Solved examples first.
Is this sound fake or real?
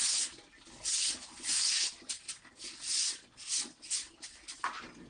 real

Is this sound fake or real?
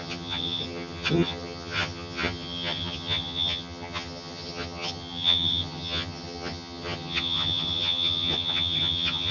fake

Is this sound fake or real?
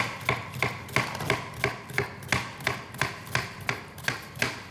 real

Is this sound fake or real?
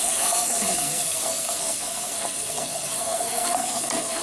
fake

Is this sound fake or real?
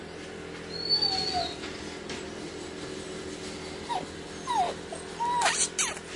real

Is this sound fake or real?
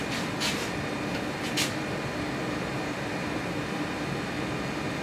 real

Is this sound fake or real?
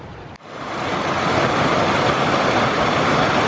real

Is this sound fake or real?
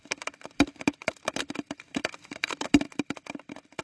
real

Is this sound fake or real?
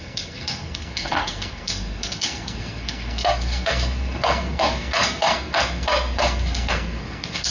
fake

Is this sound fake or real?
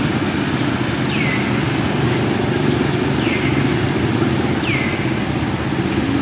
real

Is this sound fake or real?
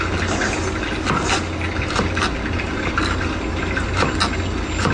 real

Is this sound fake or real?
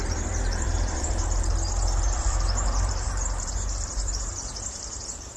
fake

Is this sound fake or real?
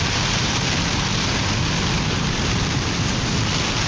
real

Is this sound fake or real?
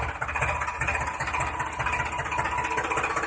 real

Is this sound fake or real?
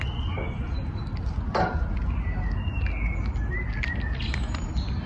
real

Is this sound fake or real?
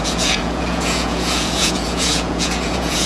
fake